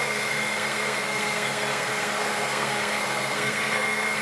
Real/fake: fake